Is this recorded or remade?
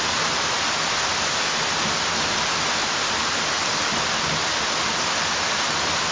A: recorded